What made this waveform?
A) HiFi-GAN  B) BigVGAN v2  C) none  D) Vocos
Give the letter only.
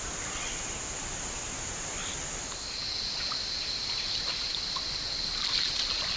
C